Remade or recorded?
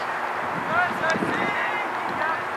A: recorded